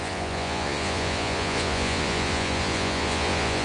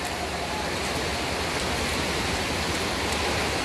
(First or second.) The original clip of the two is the second